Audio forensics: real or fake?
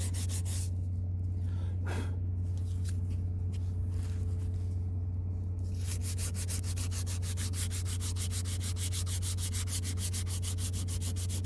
real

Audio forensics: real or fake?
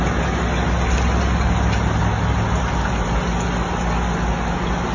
real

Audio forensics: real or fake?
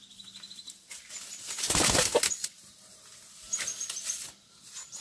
real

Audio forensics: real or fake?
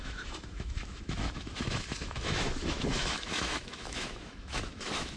fake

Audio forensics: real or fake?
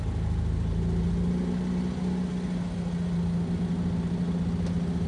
real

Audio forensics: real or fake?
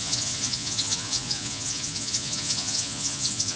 fake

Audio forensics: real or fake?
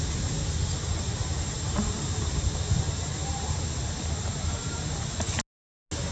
real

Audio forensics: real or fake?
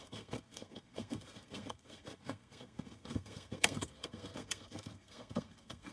fake